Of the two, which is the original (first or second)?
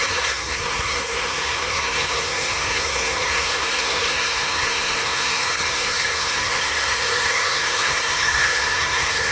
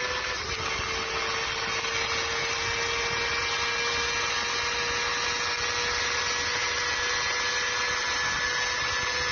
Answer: second